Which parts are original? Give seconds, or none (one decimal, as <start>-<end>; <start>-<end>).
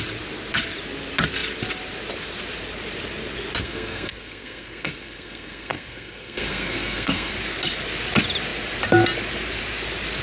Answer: 0.0-3.6; 7.3-10.2